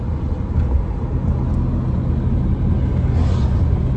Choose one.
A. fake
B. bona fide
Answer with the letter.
B